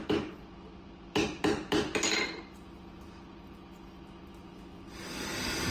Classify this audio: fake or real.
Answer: real